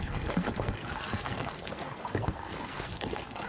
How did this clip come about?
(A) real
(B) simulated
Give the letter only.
B